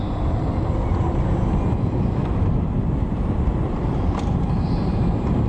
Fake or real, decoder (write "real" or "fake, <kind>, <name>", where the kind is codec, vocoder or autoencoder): real